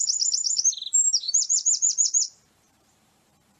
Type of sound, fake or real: fake